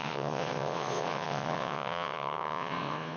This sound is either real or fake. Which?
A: fake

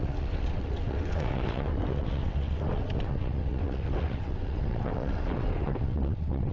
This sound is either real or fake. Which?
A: fake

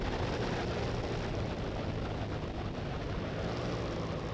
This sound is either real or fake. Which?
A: real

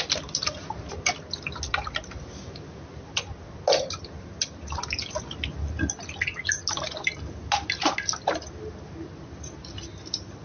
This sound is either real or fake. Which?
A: real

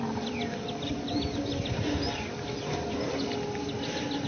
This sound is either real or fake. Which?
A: real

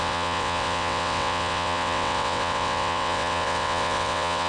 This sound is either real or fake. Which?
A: fake